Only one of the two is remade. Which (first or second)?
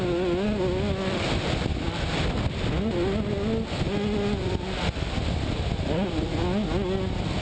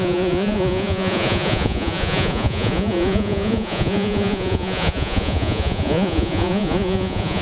second